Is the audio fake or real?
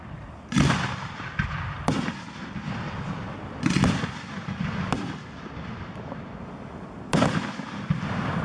real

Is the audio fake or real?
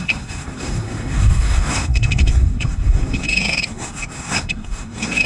fake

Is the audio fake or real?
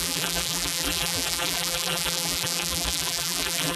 fake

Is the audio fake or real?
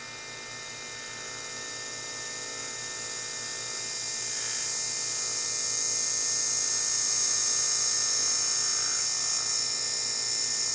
real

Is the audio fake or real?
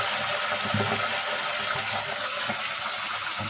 real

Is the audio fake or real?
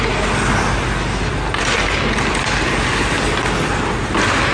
real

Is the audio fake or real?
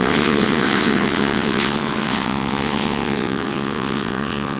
fake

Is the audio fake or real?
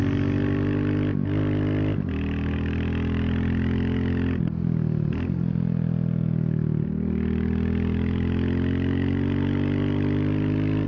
real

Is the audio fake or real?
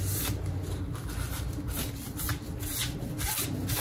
real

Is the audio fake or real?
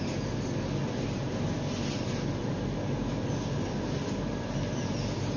real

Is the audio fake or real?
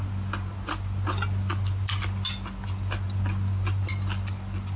real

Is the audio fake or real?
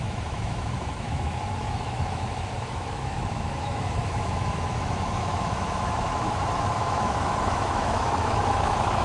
fake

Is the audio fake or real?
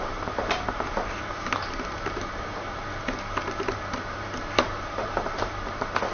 fake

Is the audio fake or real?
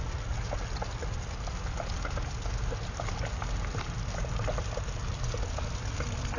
real